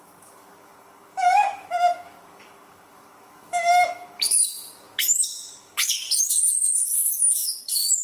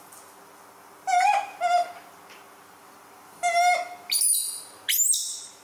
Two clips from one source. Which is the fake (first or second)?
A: first